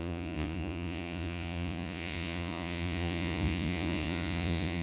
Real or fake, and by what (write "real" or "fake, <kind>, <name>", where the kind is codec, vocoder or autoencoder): fake, vocoder, Vocos